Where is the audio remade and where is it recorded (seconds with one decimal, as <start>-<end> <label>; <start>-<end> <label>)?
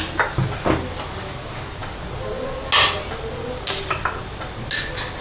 0.0-5.2 recorded